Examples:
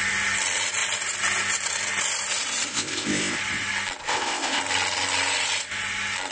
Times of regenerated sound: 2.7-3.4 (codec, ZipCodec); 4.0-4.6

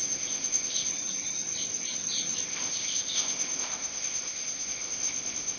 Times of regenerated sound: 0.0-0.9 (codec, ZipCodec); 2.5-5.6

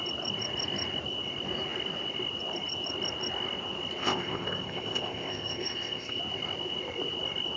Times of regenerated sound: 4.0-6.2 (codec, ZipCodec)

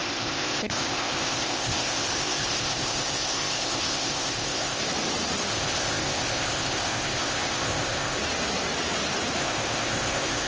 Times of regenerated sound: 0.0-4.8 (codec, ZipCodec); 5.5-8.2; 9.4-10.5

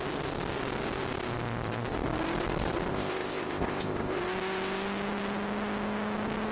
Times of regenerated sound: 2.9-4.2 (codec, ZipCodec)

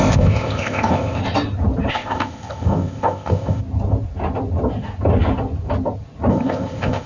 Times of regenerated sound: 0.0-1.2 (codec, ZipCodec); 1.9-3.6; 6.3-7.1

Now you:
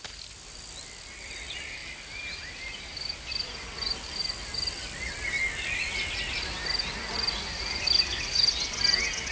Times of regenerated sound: none

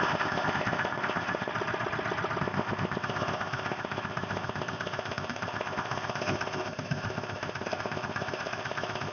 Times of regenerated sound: 0.0-1.5 (codec, ZipCodec); 2.4-9.1